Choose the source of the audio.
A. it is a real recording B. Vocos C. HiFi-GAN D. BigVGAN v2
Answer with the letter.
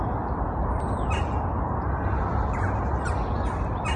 A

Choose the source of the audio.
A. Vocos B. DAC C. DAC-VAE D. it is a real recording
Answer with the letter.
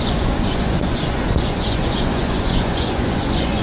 A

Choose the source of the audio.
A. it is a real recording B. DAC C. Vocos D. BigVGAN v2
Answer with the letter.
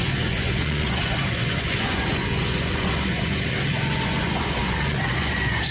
C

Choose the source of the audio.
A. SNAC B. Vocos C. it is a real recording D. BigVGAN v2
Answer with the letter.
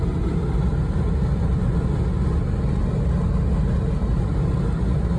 C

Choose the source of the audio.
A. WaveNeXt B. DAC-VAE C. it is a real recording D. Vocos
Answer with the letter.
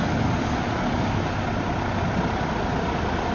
C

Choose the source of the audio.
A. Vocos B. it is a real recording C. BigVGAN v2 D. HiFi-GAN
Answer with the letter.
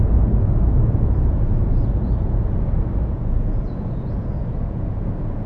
A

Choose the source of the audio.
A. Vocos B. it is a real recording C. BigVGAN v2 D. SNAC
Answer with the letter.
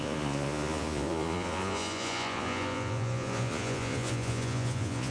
A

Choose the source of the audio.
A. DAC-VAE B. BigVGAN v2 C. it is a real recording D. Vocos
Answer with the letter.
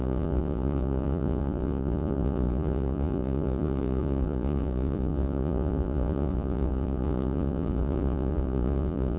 D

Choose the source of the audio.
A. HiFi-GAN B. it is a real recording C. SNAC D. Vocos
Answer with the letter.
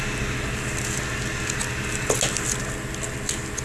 B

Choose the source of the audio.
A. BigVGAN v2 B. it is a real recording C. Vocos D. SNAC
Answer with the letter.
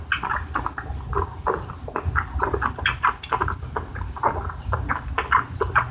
B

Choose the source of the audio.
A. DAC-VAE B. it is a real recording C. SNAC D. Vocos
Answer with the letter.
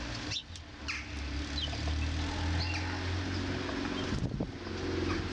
B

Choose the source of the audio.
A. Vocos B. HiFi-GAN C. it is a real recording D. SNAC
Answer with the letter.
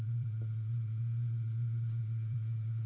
A